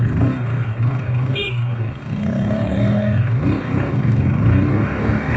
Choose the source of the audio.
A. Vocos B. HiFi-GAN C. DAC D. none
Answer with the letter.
C